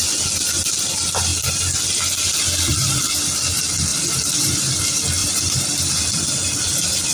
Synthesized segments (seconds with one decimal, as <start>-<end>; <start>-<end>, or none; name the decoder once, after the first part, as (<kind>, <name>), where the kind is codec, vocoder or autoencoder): 3.9-4.7 (vocoder, BigVGAN v2); 5.2-5.9

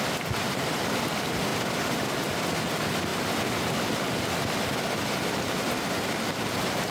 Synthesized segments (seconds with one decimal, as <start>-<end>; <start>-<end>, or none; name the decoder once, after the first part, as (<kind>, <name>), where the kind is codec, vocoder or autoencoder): none

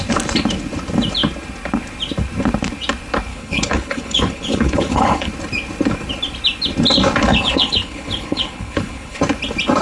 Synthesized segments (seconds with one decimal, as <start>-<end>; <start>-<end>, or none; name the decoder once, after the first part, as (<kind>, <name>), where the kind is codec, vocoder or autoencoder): 3.3-5.3 (codec, HILCodec); 7.3-9.2